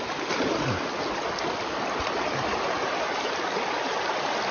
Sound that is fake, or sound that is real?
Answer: real